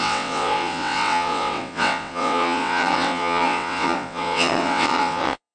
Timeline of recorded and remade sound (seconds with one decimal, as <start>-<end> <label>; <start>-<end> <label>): 0.0-5.5 remade